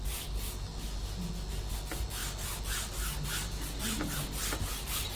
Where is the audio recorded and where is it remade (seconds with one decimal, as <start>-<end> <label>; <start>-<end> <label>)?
0.0-5.2 recorded